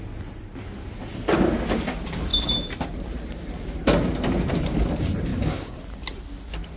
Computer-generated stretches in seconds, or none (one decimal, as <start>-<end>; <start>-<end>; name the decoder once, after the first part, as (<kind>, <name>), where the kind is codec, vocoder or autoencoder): 5.3-5.8 (codec, DAC)